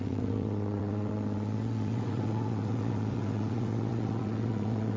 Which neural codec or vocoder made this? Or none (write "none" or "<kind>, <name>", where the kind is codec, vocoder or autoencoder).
vocoder, WaveNeXt